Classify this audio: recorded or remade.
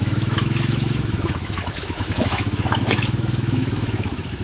remade